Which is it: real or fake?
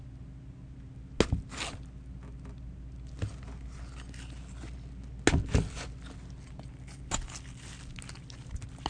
real